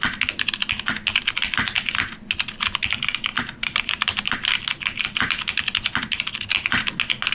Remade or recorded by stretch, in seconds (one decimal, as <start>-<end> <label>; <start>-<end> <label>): 0.0-3.3 recorded; 3.3-4.3 remade; 4.3-7.3 recorded